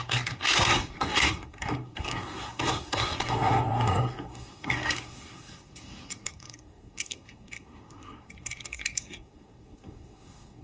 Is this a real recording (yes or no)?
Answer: no